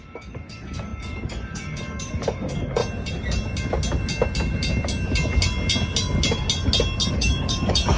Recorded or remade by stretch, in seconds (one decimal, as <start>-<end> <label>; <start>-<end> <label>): 0.0-2.8 remade; 2.8-7.1 recorded; 7.1-8.0 remade